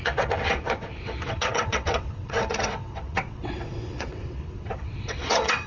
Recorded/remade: remade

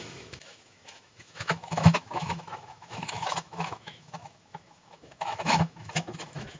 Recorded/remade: remade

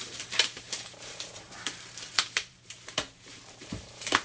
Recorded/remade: remade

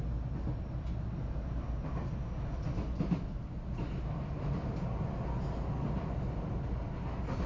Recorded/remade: recorded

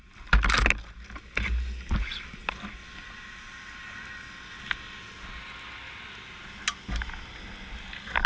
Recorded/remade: recorded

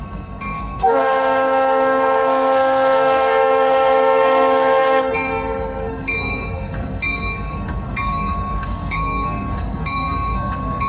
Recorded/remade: remade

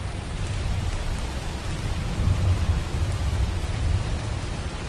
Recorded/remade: remade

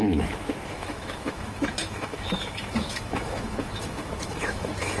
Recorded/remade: remade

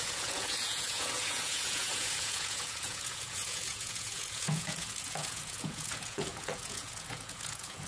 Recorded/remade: remade